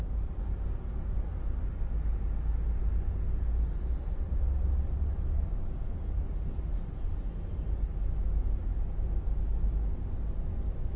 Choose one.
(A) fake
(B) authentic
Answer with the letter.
B